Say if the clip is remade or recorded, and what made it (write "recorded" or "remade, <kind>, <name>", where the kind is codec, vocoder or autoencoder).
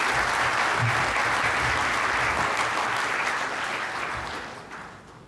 recorded